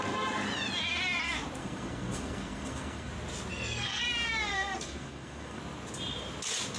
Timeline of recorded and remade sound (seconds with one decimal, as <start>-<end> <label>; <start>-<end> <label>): 0.0-1.6 recorded; 1.6-3.1 remade; 3.1-3.5 recorded; 3.5-4.0 remade; 4.0-4.5 recorded; 4.5-5.6 remade; 5.6-6.8 recorded